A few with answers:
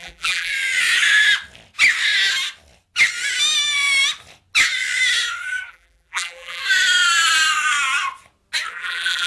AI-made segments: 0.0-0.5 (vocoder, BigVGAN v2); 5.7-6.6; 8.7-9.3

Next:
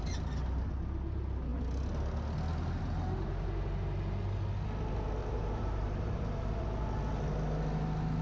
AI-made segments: 5.2-6.5 (vocoder, BigVGAN v2)

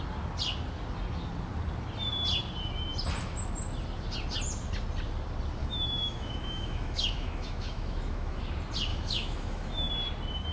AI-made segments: 5.6-8.4 (autoencoder, DAC-VAE); 8.9-9.9

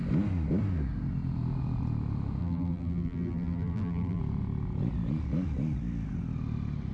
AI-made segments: 2.4-4.2 (vocoder, BigVGAN v2)